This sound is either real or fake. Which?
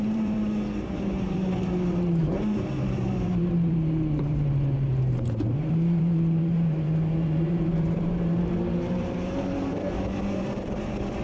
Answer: fake